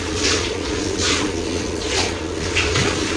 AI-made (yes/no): yes